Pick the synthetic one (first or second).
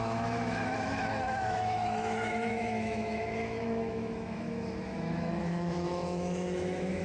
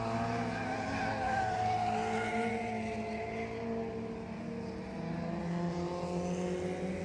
first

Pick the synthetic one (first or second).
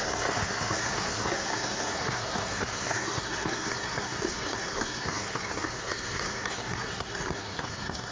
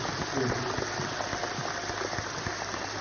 first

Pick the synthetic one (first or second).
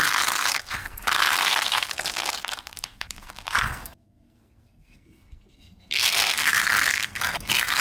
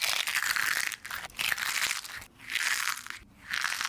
first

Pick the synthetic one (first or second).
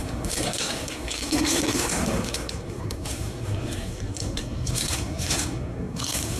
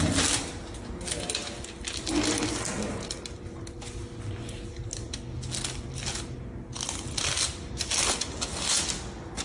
first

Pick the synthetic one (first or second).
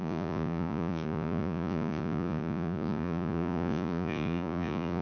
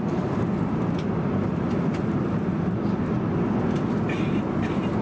first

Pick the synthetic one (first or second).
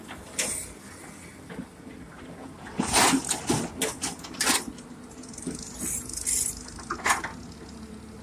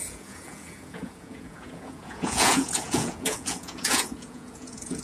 second